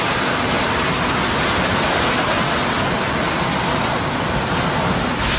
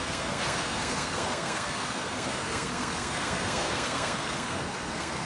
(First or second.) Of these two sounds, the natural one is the first